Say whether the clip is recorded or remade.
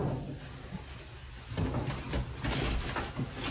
recorded